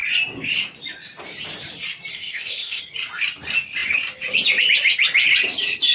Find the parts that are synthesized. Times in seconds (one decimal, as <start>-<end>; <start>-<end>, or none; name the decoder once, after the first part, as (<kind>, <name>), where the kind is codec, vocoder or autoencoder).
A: 2.1-2.8 (codec, ZipCodec)